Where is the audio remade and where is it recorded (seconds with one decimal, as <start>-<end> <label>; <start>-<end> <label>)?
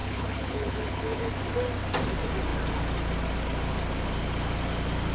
0.0-1.3 remade; 1.3-5.1 recorded